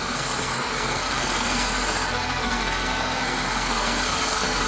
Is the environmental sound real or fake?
fake